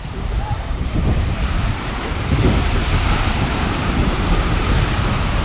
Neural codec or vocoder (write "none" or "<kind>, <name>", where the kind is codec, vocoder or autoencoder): vocoder, BigVGAN v2